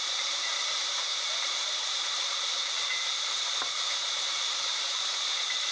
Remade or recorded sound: remade